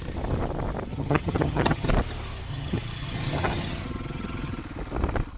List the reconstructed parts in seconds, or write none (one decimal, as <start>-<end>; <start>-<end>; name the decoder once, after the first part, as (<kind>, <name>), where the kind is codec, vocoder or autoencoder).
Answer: 0.9-1.9 (vocoder, HiFi-GAN); 2.5-4.6